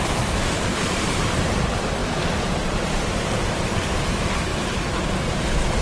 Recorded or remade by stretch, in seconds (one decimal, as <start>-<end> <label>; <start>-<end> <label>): 0.0-4.5 remade; 4.5-5.8 recorded